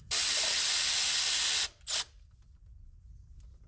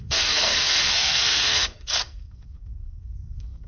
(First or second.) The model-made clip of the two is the second